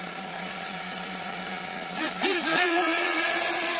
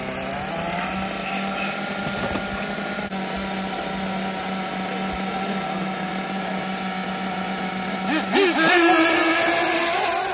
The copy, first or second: first